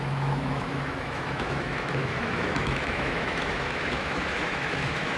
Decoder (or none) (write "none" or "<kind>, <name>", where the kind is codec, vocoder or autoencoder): autoencoder, DAC-VAE